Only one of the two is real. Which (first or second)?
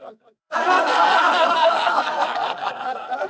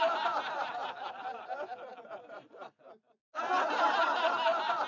second